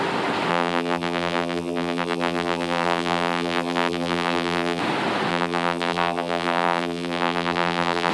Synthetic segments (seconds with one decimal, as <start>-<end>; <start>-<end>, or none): 0.5-4.8; 5.3-8.1